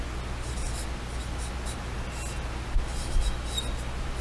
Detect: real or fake real